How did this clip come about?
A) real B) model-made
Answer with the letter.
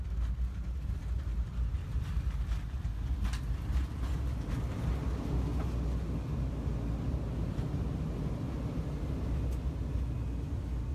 A